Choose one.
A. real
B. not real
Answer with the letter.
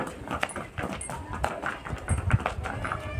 A